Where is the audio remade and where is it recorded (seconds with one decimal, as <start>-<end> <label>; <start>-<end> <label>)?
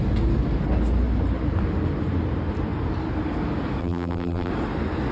0.0-3.8 recorded; 3.8-4.5 remade; 4.5-5.1 recorded